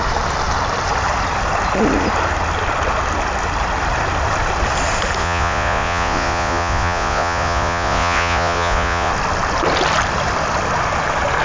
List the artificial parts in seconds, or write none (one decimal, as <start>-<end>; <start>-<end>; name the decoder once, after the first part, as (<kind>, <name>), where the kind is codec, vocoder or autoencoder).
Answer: 5.2-9.1 (vocoder, Vocos)